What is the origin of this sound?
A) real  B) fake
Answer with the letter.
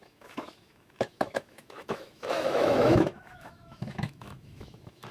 B